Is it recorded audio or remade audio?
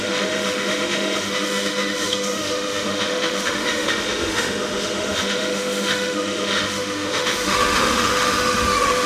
remade